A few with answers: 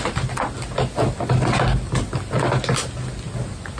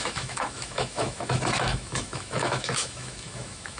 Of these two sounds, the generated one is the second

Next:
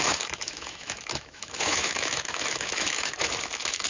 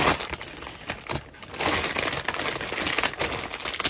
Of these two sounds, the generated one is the first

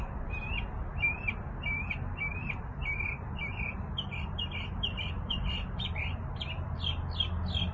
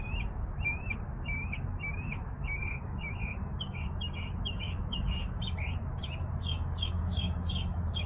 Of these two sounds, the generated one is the second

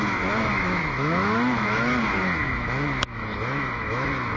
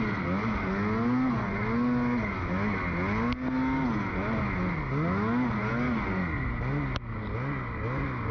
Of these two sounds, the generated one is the first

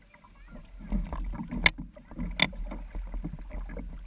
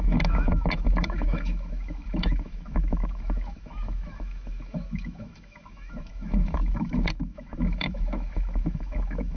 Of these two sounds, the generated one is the second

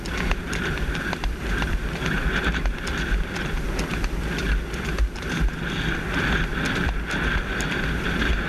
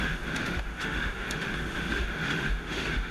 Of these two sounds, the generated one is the second